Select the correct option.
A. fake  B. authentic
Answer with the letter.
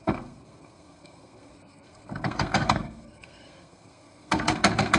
A